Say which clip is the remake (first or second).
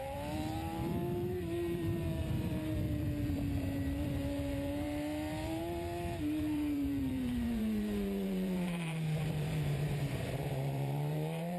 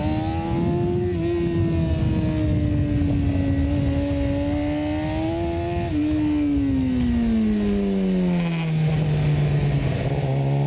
first